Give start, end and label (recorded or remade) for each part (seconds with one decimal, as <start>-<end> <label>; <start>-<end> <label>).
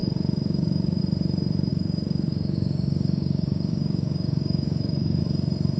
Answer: 0.0-1.0 remade; 1.0-1.7 recorded; 1.7-5.2 remade; 5.2-5.8 recorded